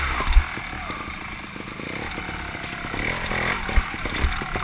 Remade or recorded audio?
recorded